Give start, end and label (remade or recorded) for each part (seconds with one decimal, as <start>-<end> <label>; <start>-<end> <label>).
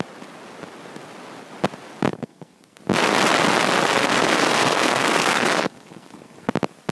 0.0-2.1 recorded; 2.1-2.8 remade; 2.8-4.0 recorded; 4.0-6.5 remade; 6.5-6.9 recorded